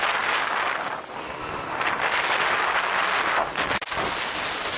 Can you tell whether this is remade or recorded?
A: recorded